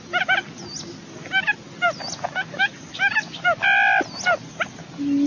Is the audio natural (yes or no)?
yes